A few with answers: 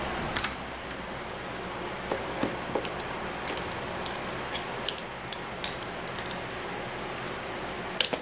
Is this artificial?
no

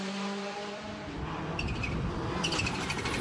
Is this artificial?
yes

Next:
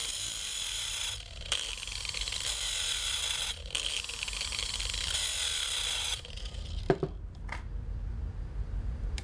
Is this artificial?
yes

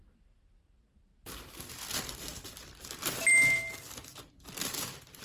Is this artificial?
yes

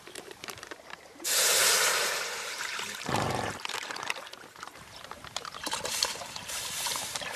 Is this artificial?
yes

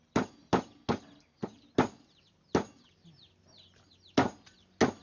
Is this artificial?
no